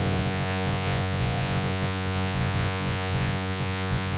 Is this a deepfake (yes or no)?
yes